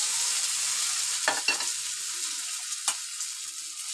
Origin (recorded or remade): recorded